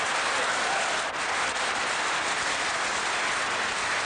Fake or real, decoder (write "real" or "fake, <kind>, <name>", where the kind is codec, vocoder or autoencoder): real